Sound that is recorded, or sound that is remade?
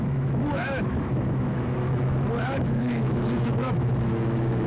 remade